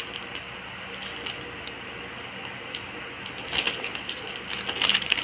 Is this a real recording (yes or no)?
yes